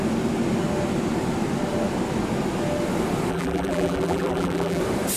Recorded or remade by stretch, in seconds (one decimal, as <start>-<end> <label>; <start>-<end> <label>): 0.0-3.3 recorded; 3.3-4.8 remade; 4.8-5.2 recorded